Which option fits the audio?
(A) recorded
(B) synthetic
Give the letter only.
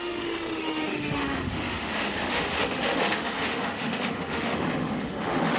B